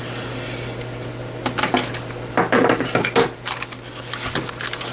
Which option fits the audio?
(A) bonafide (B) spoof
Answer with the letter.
A